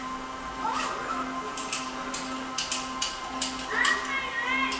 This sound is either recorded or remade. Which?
recorded